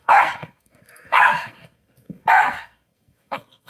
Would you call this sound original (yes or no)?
no